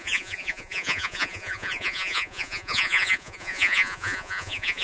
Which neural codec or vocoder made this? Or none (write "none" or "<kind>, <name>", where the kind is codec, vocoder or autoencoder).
vocoder, Vocos